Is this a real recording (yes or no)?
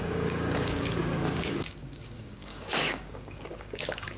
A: no